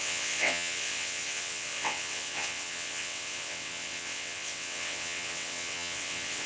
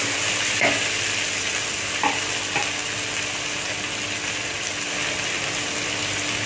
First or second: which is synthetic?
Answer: first